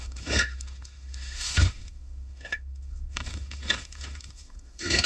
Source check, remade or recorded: remade